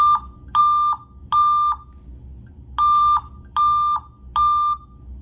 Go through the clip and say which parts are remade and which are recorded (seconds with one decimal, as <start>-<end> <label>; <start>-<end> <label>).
0.0-5.2 recorded